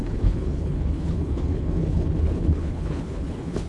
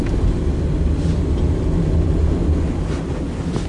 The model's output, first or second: first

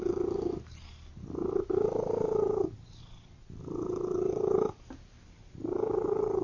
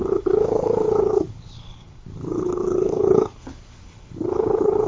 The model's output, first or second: second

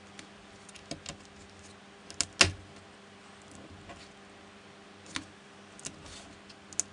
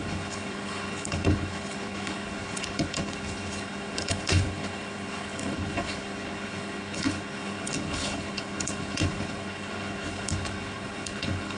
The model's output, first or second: second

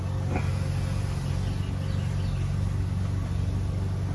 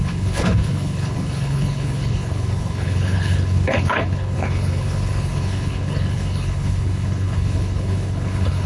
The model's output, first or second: second